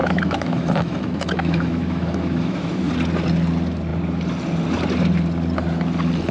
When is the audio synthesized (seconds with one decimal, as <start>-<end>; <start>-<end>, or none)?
0.0-2.9